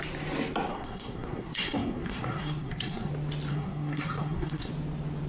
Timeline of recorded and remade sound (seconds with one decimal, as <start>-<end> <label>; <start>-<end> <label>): 0.0-0.7 recorded; 0.7-3.1 remade; 3.1-3.5 recorded; 3.5-4.7 remade; 4.7-5.3 recorded